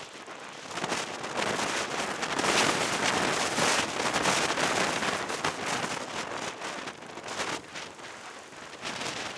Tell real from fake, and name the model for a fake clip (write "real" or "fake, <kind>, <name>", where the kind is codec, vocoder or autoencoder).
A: real